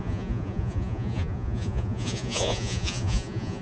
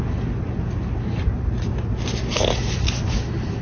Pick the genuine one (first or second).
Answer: second